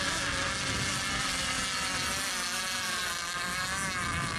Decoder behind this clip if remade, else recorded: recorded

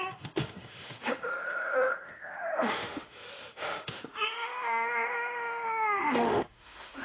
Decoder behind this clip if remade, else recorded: remade, autoencoder, DAC-VAE